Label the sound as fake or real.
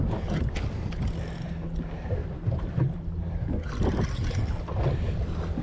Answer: real